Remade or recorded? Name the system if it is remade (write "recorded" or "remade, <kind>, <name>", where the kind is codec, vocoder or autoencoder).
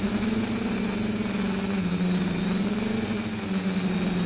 recorded